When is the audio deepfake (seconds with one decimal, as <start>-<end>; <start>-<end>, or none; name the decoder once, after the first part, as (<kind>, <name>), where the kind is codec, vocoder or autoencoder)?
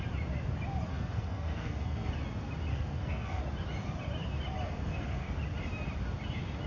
0.9-2.1 (codec, SNAC); 2.7-3.4; 4.8-5.3